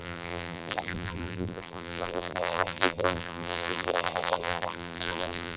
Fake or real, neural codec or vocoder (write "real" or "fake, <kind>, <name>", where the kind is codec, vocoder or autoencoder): fake, vocoder, BigVGAN v2